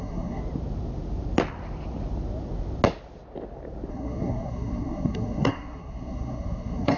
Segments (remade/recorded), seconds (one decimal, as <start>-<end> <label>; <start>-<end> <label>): 0.0-0.4 remade; 0.4-3.9 recorded; 3.9-7.0 remade